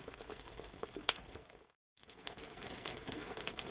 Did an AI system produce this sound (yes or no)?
yes